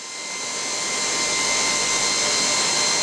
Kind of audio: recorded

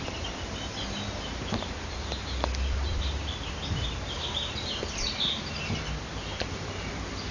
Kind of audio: remade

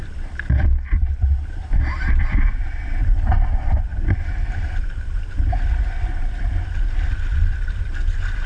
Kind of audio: recorded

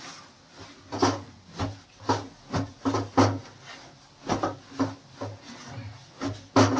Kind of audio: recorded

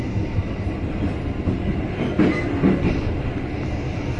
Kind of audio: recorded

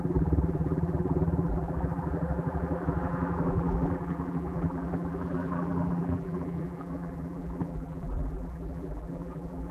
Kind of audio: remade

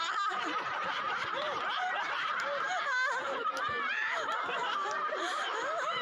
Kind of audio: remade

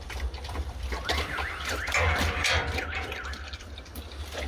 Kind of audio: remade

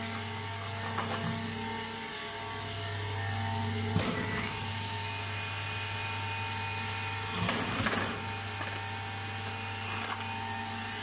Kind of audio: recorded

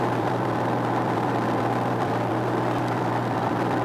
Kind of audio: remade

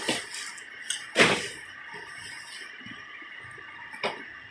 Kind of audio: recorded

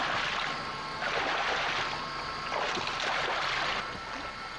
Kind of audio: recorded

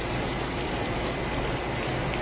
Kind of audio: remade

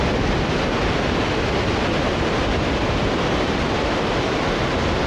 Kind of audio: recorded